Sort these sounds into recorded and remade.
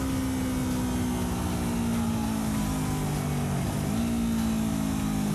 recorded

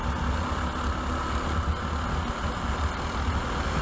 recorded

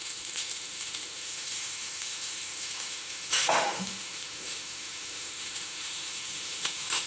remade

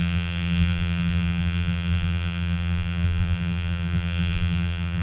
remade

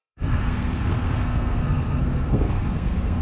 remade